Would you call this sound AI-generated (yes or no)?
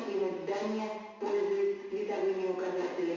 no